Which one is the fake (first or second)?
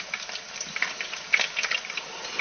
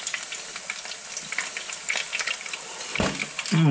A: first